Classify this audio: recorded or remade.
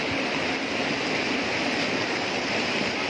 recorded